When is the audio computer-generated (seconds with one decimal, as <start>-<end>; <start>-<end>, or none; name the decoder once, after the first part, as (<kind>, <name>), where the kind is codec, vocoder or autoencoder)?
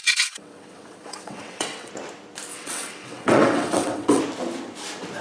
0.0-1.9 (vocoder, WaveNeXt); 2.5-4.2